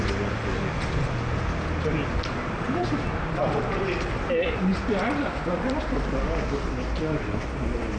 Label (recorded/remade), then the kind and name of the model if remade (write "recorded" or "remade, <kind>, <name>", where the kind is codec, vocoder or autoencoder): recorded